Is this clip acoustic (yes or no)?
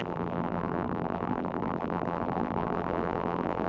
no